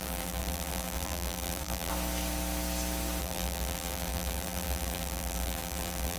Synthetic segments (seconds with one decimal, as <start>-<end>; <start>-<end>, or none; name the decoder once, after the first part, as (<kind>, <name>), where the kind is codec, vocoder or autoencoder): 0.0-1.9 (vocoder, BigVGAN v2); 3.2-6.2